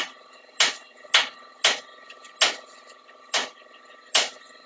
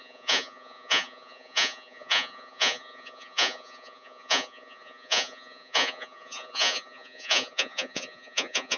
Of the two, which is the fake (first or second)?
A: second